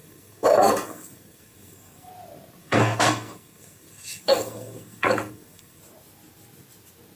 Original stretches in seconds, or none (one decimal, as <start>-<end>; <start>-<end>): 2.1-2.6; 5.8-7.2